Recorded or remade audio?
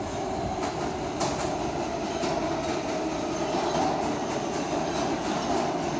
recorded